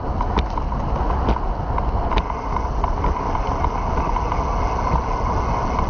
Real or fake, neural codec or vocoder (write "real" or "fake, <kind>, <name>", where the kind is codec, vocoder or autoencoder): real